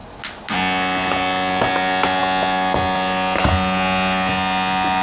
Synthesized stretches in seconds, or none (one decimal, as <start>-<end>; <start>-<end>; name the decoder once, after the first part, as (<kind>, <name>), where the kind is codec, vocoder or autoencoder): none